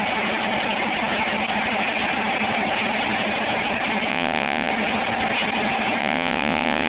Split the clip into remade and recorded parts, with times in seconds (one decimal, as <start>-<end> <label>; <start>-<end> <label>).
0.0-4.1 recorded; 4.1-4.7 remade; 4.7-6.0 recorded; 6.0-6.9 remade